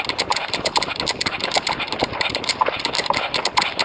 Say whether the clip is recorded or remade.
recorded